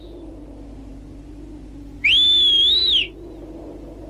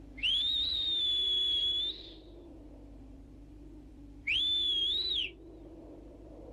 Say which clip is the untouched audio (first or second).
first